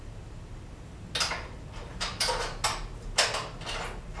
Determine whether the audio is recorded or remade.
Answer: recorded